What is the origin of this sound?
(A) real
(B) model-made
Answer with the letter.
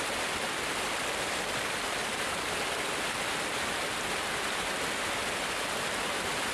A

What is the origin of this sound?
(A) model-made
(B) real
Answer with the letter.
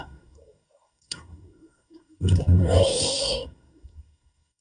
A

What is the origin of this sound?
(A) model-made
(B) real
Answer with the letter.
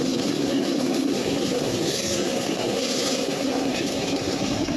A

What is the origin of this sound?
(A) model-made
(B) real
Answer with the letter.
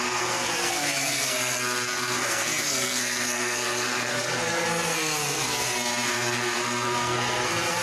A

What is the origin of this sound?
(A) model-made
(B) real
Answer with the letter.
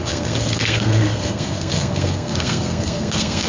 A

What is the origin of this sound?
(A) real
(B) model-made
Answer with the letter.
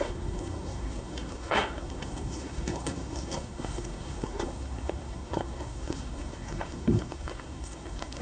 B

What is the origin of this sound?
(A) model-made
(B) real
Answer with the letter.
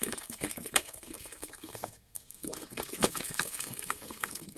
A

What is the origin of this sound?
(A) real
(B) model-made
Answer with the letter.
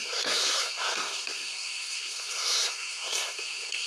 B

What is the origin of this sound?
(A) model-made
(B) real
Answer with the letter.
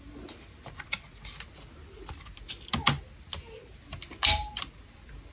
B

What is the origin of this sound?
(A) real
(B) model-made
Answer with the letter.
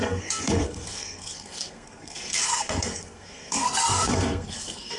B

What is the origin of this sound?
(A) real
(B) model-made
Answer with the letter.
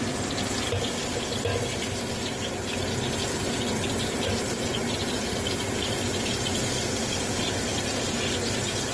A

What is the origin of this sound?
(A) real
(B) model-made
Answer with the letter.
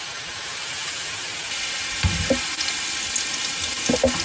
A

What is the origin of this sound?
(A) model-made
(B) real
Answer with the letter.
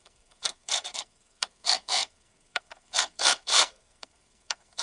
A